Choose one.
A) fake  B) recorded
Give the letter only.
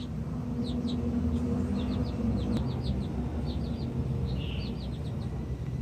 B